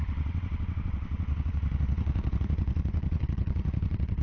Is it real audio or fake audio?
fake